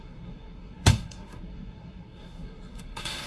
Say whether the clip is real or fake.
fake